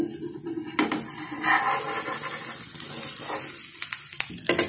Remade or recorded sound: recorded